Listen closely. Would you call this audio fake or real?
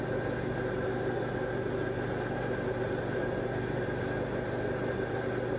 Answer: real